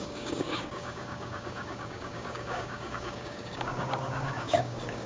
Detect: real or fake fake